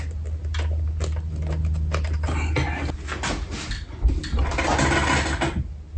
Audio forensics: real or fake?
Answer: real